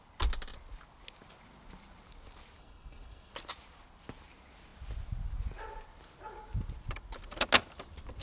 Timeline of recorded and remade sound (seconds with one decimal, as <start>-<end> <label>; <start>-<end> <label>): 0.0-2.6 recorded; 2.6-3.3 remade; 3.3-8.2 recorded